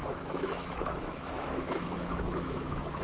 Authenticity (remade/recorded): remade